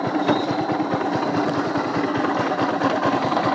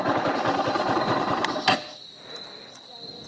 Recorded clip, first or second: first